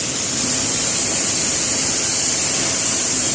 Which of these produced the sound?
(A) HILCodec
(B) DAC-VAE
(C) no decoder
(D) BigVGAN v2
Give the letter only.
C